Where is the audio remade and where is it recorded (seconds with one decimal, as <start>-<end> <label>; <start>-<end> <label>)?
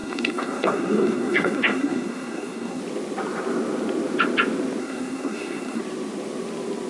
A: 0.0-2.8 remade; 2.8-4.8 recorded; 4.8-5.8 remade; 5.8-6.9 recorded